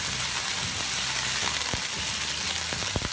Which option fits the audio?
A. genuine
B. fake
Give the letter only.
A